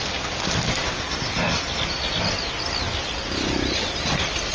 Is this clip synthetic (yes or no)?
no